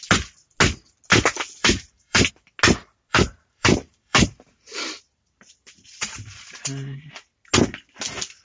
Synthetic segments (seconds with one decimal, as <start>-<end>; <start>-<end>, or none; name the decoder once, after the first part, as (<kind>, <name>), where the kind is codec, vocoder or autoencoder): 1.6-2.3 (vocoder, BigVGAN v2); 3.1-7.1